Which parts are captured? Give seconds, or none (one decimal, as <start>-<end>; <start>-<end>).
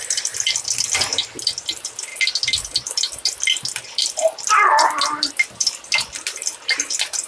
0.0-7.3